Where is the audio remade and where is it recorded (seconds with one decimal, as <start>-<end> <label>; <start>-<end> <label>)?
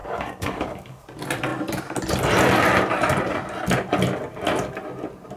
0.0-1.0 remade; 1.0-5.4 recorded